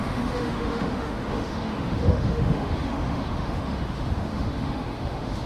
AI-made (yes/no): yes